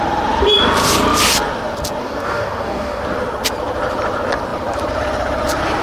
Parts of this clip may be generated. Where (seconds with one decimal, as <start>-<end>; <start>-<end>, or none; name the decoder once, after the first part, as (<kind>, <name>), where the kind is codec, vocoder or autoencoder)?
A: 2.0-3.0 (codec, DAC)